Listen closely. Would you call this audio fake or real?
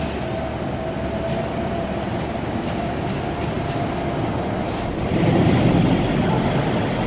real